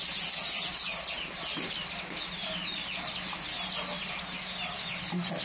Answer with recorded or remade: recorded